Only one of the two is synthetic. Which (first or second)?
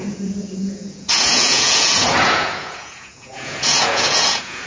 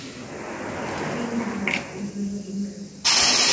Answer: first